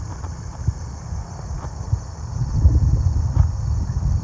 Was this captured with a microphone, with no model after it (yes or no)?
no